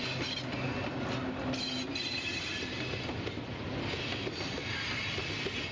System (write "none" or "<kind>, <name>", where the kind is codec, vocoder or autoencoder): none